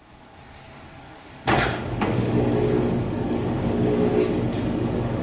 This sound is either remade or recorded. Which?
remade